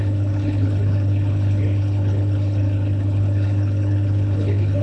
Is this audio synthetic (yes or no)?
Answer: yes